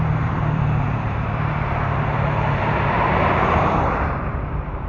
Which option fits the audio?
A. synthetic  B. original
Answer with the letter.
A